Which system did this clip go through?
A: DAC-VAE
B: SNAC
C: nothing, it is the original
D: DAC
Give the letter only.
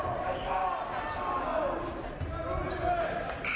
C